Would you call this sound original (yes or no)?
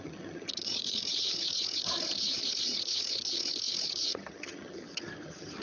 no